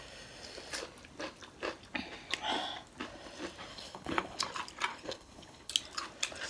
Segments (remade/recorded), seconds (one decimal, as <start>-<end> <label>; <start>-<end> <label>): 0.0-3.7 recorded; 3.7-4.4 remade; 4.4-4.9 recorded; 4.9-5.7 remade; 5.7-6.5 recorded